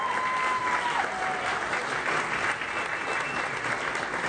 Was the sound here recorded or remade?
recorded